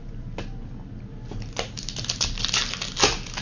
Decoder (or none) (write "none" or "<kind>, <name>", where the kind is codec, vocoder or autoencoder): none